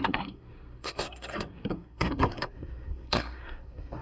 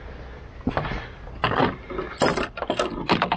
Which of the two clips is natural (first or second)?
second